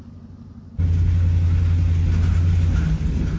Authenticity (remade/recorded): recorded